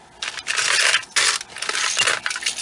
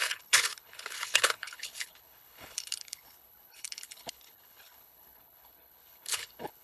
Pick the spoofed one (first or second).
second